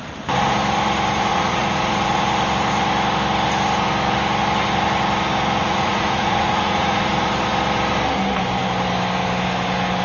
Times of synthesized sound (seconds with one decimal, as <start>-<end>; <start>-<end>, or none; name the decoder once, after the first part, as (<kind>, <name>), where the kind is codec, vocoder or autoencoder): 1.3-2.3 (vocoder, Vocos); 5.6-7.1